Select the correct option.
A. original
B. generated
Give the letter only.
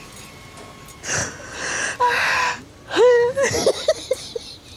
A